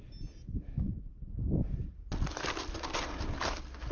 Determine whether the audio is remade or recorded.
recorded